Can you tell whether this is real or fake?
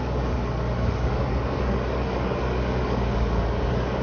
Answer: fake